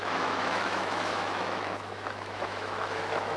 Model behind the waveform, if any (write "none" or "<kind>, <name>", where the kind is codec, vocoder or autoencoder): autoencoder, DAC-VAE